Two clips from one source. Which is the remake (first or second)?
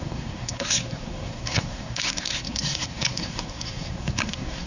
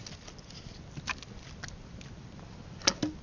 first